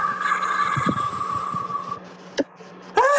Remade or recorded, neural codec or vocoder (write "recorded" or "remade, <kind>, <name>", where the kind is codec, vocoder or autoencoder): recorded